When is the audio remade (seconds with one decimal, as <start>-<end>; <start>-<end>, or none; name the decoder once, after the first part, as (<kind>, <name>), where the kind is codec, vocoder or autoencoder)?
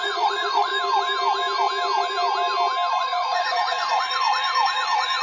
0.0-0.7 (vocoder, Vocos); 2.9-5.2